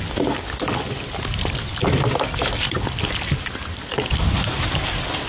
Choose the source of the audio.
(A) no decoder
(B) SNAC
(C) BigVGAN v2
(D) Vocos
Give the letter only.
C